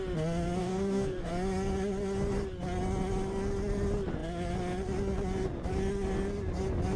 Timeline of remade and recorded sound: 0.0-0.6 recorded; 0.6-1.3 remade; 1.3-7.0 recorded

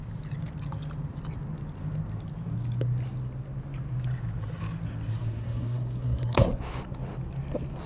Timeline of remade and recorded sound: 0.0-5.2 recorded; 5.2-6.6 remade; 6.6-7.9 recorded